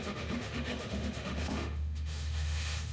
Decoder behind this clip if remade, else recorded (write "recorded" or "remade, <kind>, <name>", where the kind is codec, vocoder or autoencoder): remade, autoencoder, DAC-VAE